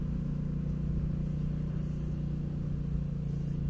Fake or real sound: real